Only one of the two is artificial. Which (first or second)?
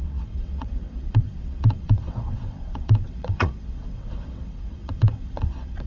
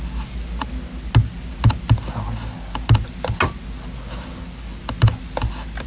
first